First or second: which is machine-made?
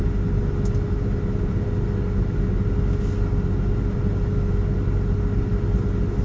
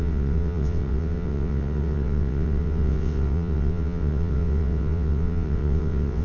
second